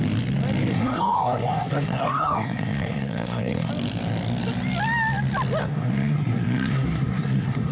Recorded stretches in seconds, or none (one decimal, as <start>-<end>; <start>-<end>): 0.0-0.7; 3.7-5.6